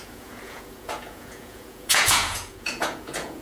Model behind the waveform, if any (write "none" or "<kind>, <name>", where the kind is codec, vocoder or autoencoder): vocoder, Vocos